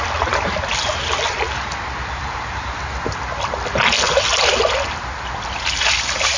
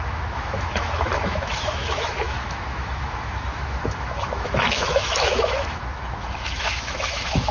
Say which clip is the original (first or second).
first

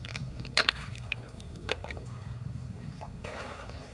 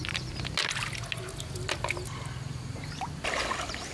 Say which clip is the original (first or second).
second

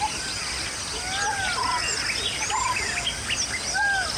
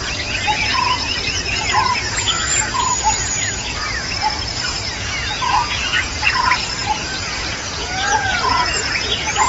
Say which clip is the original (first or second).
first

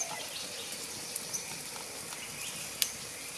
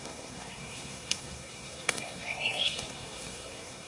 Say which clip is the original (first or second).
first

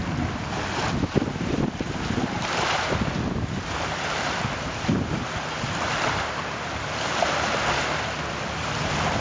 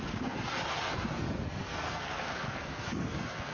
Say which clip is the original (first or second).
first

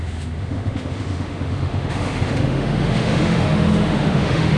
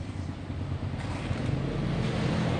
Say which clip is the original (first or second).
second